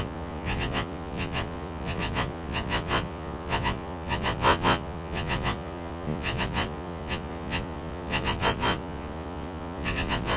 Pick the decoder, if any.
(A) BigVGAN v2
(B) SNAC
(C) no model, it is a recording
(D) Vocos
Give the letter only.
D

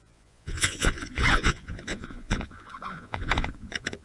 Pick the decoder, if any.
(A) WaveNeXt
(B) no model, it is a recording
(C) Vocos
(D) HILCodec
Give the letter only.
C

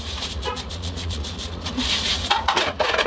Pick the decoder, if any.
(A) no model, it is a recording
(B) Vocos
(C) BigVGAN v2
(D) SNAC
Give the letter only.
B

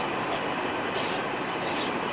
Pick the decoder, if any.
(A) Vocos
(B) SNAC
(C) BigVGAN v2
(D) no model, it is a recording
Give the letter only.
D